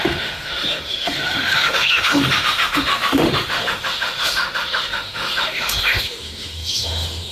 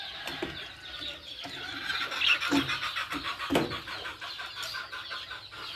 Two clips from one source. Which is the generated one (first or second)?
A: first